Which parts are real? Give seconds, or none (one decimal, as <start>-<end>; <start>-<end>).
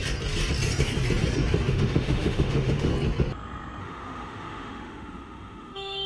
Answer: 0.0-1.7; 2.9-3.8